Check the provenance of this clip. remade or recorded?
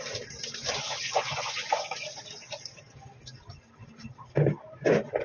recorded